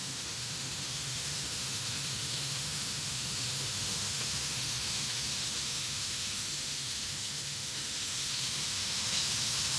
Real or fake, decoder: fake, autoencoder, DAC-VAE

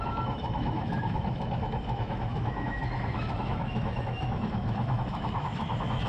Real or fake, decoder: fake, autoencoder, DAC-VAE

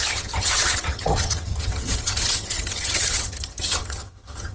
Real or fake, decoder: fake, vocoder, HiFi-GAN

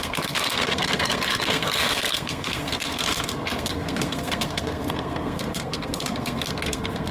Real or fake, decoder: fake, codec, SNAC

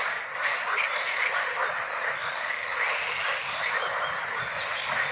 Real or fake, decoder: real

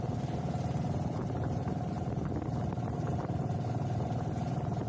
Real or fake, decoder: real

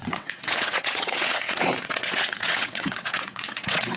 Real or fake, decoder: fake, vocoder, WaveNeXt